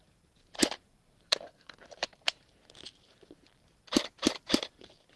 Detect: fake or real fake